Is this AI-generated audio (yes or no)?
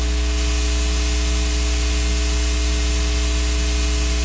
no